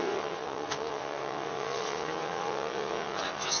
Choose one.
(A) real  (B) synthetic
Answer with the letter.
B